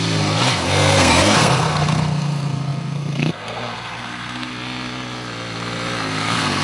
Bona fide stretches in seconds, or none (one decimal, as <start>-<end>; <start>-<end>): 4.5-6.1